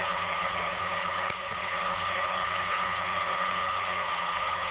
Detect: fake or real fake